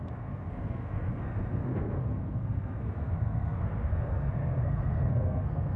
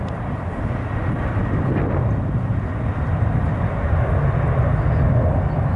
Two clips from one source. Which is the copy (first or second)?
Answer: first